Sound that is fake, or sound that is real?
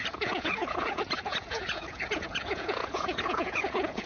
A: fake